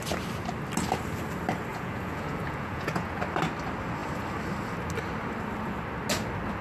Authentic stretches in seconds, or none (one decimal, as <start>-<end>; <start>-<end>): 0.0-1.7; 3.2-6.6

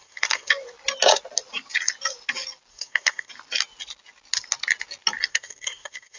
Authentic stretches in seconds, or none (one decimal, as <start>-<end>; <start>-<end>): 0.5-2.7; 3.3-5.3

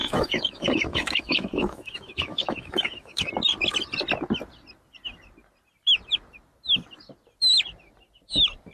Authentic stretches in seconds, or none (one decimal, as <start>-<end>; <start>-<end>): 3.3-8.7

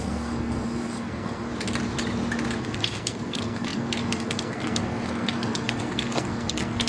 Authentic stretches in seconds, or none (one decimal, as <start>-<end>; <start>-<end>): 1.5-2.6

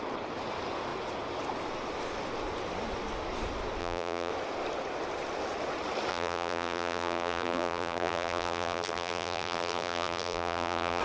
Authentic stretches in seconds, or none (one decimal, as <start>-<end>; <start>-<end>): 0.0-3.8; 4.3-6.1

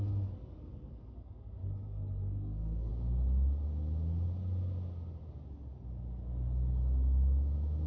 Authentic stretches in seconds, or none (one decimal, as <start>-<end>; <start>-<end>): 2.9-7.9

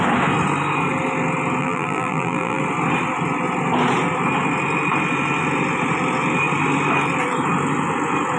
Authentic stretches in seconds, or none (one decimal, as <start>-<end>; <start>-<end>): 0.0-1.6; 2.6-8.4

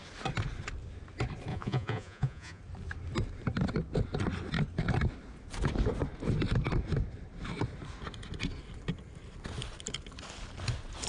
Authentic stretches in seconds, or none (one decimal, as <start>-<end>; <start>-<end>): 0.0-1.5; 2.6-11.1